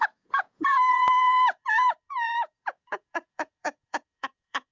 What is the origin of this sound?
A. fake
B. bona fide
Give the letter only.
A